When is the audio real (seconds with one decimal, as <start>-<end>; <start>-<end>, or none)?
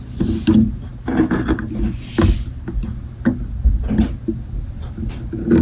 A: 0.0-5.6